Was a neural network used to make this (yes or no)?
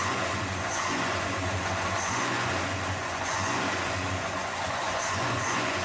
yes